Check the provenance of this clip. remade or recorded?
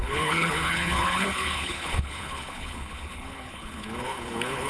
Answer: remade